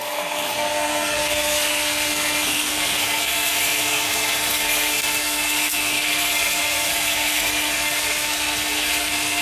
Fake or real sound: fake